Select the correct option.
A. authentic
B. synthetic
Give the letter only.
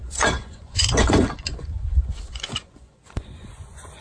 B